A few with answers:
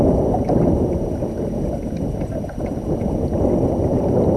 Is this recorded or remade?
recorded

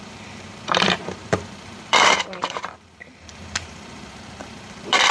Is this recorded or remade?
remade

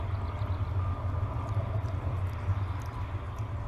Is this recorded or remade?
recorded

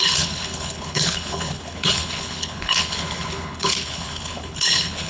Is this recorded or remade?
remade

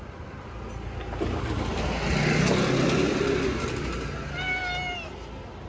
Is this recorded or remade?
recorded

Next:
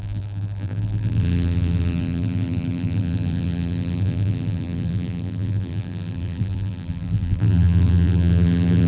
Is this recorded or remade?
remade